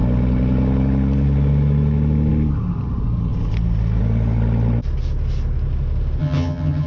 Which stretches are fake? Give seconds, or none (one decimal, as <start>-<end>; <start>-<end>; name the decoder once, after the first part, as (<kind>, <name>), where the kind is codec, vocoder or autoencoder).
6.2-6.9 (vocoder, HiFi-GAN)